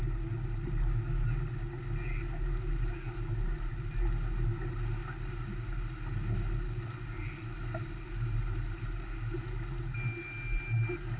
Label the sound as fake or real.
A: real